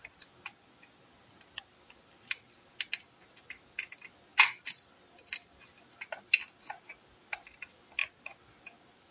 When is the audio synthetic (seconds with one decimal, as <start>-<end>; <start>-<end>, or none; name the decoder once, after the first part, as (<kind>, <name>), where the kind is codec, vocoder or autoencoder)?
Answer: none